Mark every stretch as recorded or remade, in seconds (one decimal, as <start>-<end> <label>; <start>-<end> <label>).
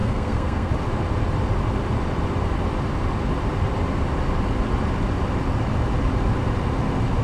0.0-0.7 remade; 0.7-7.2 recorded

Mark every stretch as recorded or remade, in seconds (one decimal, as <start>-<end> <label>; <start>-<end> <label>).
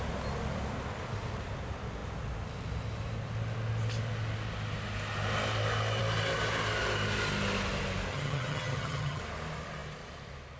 0.0-8.1 recorded; 8.1-9.2 remade; 9.2-10.6 recorded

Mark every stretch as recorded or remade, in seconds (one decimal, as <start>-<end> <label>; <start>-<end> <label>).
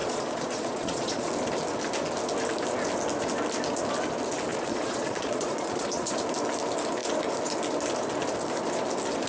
0.0-1.3 remade; 1.3-4.5 recorded; 4.5-6.1 remade; 6.1-9.3 recorded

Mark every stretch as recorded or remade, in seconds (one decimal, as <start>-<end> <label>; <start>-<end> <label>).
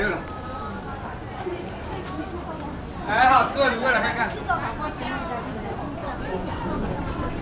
0.0-6.0 recorded; 6.0-7.0 remade; 7.0-7.4 recorded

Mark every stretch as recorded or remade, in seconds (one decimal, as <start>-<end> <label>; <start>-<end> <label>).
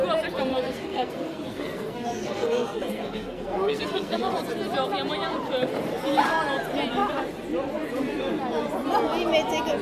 0.0-0.5 recorded; 0.5-4.3 remade; 4.3-9.8 recorded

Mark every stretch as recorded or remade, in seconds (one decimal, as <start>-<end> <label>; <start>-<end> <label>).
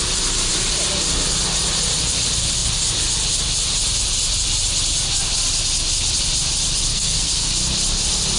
0.0-6.9 recorded; 6.9-7.5 remade; 7.5-8.4 recorded